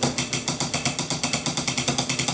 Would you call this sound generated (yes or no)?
no